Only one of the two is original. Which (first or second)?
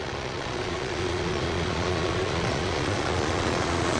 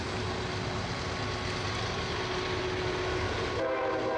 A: second